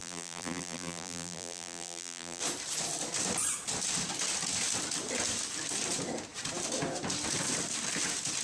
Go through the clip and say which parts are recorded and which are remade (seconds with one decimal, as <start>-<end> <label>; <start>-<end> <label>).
0.0-2.4 remade; 2.4-8.4 recorded